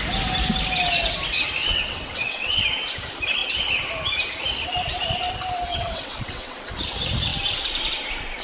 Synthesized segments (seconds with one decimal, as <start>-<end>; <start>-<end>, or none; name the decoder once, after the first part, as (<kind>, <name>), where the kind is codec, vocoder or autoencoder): 1.6-2.6 (vocoder, WaveNeXt); 5.7-6.6